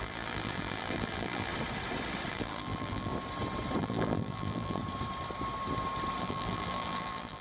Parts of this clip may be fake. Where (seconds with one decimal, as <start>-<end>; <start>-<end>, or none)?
0.0-1.5; 2.3-3.1; 3.8-4.8; 6.2-7.4